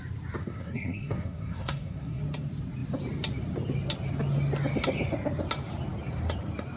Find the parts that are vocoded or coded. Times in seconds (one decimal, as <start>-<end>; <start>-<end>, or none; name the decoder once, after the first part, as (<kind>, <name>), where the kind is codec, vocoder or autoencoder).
0.4-2.2 (codec, SNAC)

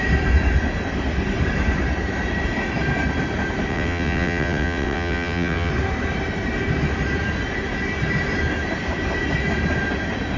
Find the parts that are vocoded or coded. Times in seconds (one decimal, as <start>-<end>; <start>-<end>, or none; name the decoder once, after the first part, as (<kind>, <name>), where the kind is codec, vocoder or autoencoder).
3.7-5.7 (vocoder, WaveNeXt)